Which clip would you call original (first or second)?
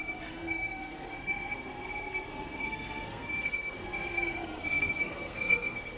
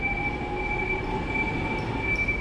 second